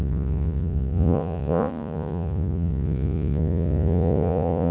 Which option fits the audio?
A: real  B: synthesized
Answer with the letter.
B